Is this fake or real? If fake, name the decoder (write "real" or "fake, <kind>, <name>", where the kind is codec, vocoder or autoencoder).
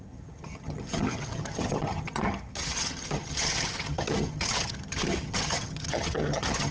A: fake, vocoder, HiFi-GAN